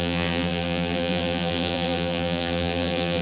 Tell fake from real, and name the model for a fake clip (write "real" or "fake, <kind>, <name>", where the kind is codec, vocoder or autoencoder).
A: fake, vocoder, BigVGAN v2